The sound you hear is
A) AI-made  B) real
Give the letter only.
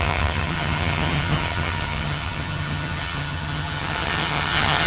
A